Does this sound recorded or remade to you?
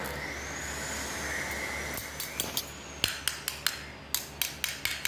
recorded